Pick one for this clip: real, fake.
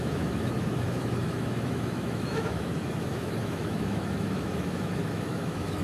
fake